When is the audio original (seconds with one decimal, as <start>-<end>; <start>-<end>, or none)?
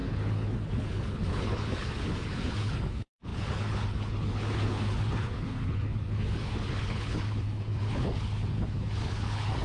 none